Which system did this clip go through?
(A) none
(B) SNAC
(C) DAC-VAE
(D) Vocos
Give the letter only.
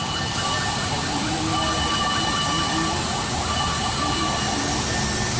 A